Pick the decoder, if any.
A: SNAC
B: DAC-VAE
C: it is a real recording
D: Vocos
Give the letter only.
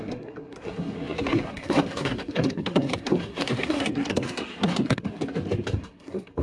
A